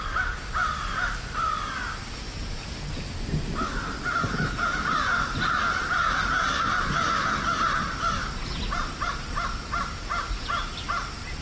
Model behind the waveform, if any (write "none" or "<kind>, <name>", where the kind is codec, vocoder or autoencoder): none